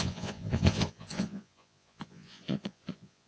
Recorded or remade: remade